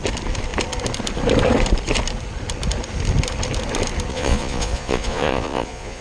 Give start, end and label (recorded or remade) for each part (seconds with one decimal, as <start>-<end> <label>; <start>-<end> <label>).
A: 0.0-4.1 recorded; 4.1-6.0 remade